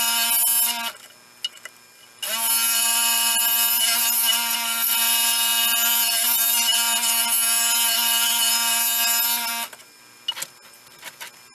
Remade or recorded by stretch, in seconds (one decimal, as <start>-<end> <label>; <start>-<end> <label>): 0.0-11.5 recorded